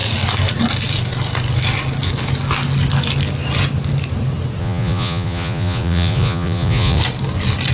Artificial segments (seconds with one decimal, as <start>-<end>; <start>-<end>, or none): 4.6-7.0